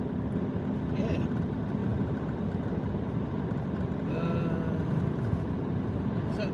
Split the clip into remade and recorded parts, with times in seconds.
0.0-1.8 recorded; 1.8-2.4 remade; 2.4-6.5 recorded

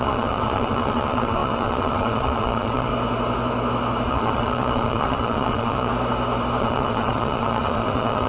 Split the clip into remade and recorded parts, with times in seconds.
0.0-2.9 remade; 2.9-4.1 recorded; 4.1-5.9 remade; 5.9-6.6 recorded; 6.6-8.3 remade

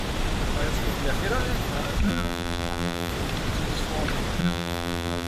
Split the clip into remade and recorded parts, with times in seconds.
0.0-2.1 recorded; 2.1-3.1 remade; 3.1-4.4 recorded; 4.4-5.3 remade

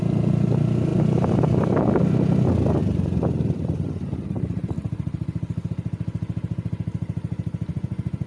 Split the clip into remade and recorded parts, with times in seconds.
0.0-7.7 recorded; 7.7-8.3 remade

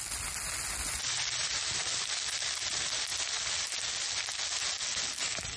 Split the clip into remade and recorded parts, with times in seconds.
0.0-5.6 recorded

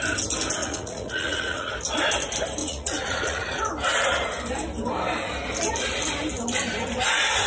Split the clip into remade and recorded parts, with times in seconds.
0.0-0.6 recorded; 0.6-1.7 remade; 1.7-2.6 recorded; 2.6-3.6 remade; 3.6-7.5 recorded